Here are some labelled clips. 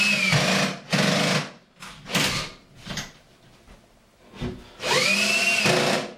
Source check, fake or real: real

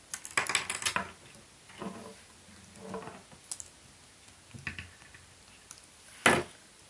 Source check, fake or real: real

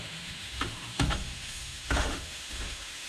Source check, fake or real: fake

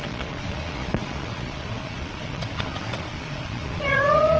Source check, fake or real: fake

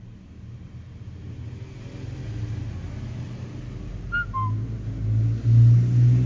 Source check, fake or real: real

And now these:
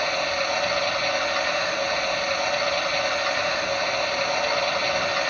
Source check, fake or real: real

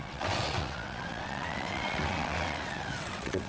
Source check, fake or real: fake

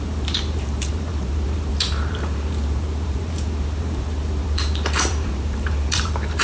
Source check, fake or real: fake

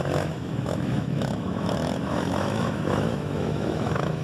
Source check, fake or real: fake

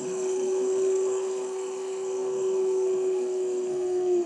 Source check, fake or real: fake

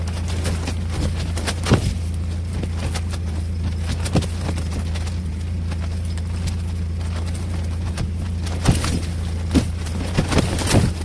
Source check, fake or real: real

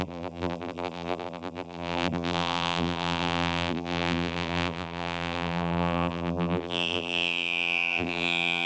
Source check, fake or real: fake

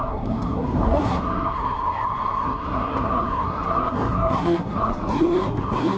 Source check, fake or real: fake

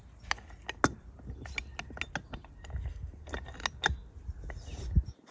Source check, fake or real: real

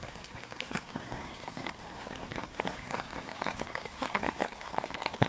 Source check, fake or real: fake